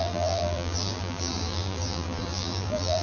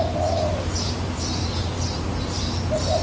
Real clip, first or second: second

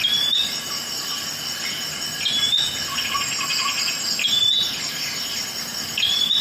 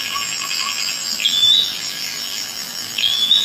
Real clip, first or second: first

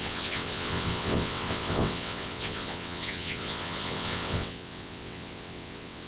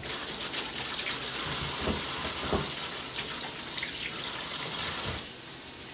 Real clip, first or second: second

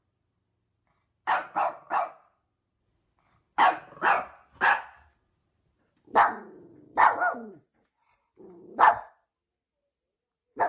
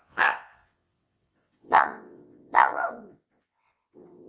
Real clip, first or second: first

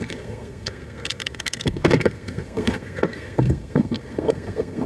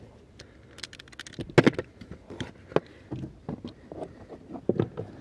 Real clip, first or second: second